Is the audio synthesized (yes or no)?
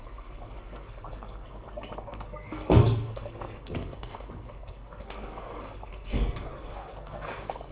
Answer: yes